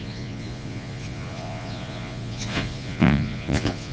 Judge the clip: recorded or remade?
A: remade